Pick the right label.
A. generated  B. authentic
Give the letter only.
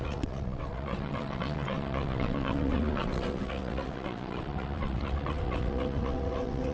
A